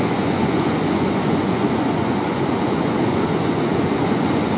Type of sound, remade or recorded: remade